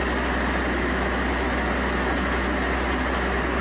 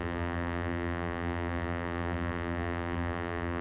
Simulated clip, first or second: second